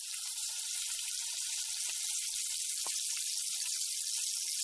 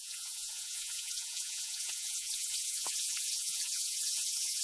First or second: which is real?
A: first